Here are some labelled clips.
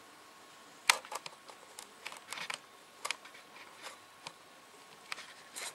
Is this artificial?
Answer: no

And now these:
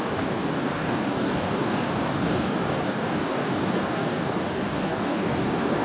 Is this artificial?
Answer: yes